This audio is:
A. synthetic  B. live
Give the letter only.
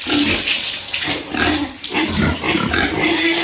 A